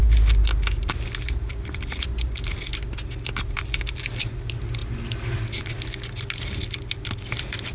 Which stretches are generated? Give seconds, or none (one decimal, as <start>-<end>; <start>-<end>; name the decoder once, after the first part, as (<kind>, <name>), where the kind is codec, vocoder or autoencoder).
none